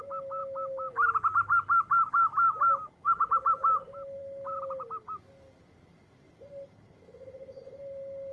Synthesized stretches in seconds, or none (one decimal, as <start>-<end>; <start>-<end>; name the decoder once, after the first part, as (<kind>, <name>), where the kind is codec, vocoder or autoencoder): none